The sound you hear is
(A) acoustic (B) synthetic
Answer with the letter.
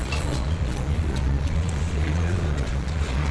B